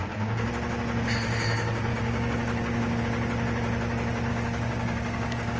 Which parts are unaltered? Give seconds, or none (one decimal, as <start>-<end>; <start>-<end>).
0.5-1.9; 3.0-4.3

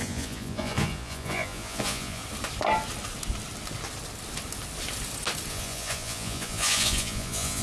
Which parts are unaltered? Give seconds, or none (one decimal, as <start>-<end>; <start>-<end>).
2.2-5.5

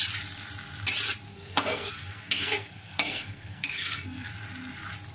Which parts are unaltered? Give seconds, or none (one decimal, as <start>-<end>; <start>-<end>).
0.0-1.3; 4.3-5.1